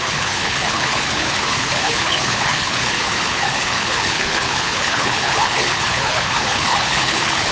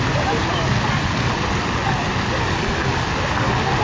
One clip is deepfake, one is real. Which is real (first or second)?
second